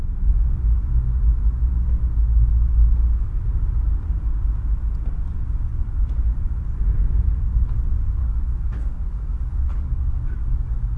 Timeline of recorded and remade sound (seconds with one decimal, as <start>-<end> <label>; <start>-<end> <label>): 0.0-8.2 recorded; 8.2-11.0 remade